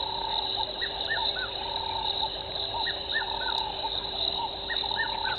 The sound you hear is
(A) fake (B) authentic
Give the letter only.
A